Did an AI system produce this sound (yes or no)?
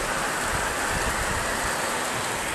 no